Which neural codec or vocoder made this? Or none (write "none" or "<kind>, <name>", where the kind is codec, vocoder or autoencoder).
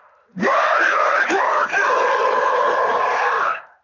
none